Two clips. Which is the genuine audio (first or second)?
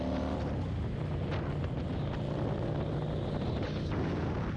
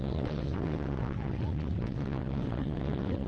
first